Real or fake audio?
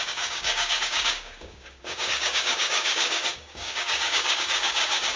fake